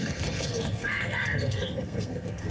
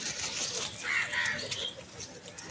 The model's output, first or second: first